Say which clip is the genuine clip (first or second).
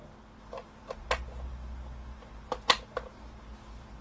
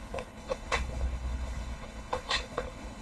first